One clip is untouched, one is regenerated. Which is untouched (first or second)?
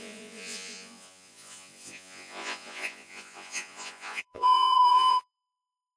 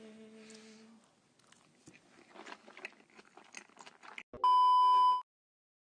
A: second